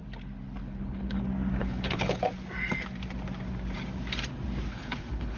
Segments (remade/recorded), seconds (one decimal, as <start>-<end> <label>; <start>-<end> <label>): 0.0-0.6 recorded; 0.6-1.2 remade; 1.2-1.6 recorded; 1.6-2.2 remade; 2.2-4.7 recorded; 4.7-5.4 remade